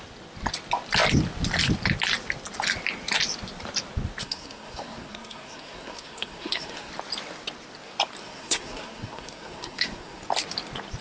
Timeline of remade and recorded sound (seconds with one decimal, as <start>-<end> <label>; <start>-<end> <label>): 0.0-4.2 recorded; 4.2-6.9 remade; 6.9-8.2 recorded; 8.2-10.2 remade; 10.2-11.0 recorded